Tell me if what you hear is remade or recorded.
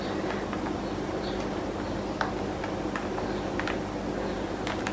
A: recorded